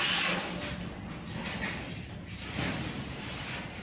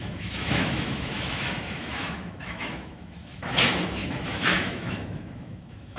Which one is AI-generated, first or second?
second